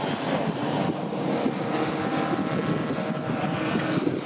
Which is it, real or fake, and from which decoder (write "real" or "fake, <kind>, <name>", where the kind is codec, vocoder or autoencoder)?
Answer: real